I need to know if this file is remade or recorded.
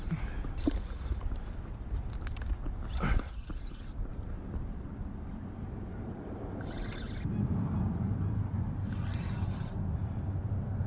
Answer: recorded